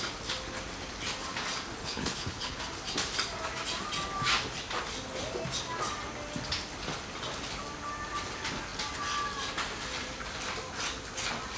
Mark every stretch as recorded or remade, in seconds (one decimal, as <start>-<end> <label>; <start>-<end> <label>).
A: 0.0-1.8 recorded; 1.8-2.6 remade; 2.6-11.6 recorded